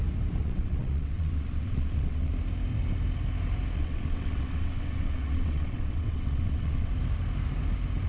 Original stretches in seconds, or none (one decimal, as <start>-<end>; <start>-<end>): 0.0-0.4; 2.3-3.8; 6.9-8.1